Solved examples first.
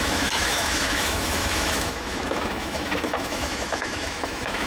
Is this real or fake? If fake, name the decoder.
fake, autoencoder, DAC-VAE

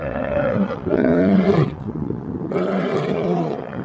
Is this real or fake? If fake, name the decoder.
fake, vocoder, WaveNeXt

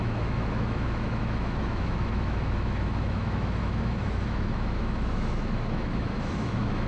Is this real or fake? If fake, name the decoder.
fake, autoencoder, DAC-VAE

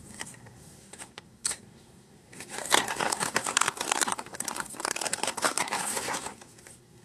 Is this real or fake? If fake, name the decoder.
fake, codec, SNAC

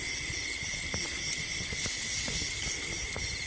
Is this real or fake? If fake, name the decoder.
real